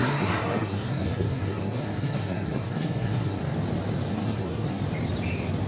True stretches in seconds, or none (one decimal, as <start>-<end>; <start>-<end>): 3.4-4.1; 4.8-5.7